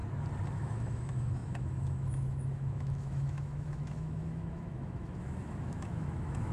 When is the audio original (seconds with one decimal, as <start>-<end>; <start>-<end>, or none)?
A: 0.0-0.5